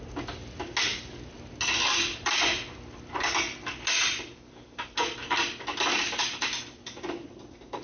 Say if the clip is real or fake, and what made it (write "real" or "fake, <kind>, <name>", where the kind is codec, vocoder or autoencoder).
real